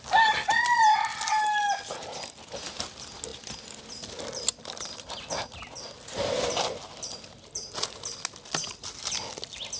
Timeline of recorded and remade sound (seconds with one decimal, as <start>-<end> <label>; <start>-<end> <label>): 0.0-3.3 recorded; 3.3-3.8 remade; 3.8-9.8 recorded